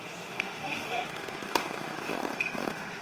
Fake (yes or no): yes